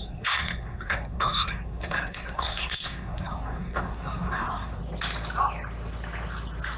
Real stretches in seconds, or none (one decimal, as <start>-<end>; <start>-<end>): 4.8-6.8